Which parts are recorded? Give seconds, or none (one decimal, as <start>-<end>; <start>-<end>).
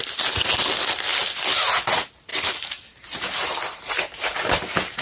0.0-2.3; 4.6-5.0